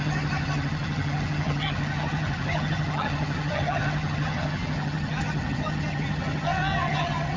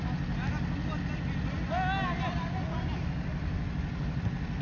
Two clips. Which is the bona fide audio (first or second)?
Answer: second